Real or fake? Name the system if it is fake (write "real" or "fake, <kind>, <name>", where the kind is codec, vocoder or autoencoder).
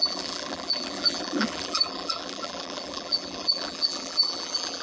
fake, vocoder, BigVGAN v2